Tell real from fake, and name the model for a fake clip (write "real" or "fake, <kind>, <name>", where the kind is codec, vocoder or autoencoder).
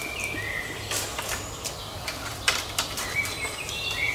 fake, vocoder, BigVGAN v2